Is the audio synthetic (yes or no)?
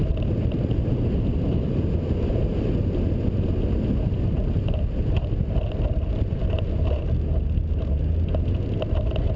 no